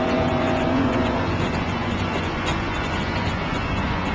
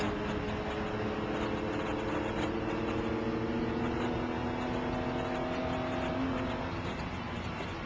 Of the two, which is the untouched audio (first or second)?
second